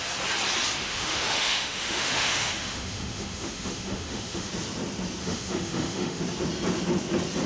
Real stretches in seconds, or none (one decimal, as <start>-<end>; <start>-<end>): 0.0-0.8; 4.5-5.2; 6.2-7.5